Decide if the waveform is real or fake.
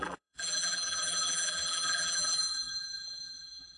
fake